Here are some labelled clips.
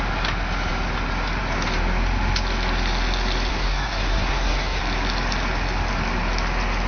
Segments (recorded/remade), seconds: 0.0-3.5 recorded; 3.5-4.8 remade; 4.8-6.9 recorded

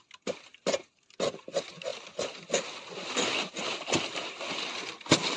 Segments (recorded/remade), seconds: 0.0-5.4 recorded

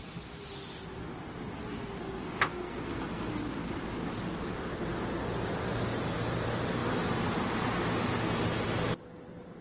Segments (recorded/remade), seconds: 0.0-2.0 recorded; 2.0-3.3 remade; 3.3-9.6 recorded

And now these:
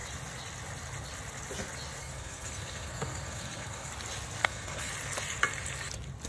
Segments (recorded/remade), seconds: 0.0-2.0 recorded; 2.0-3.9 remade; 3.9-4.4 recorded; 4.4-4.9 remade; 4.9-6.3 recorded

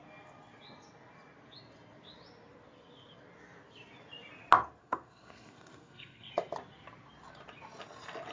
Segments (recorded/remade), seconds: 0.0-4.8 recorded; 4.8-6.3 remade; 6.3-8.3 recorded